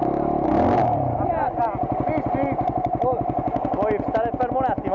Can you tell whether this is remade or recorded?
recorded